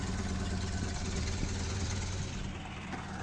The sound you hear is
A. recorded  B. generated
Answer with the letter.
A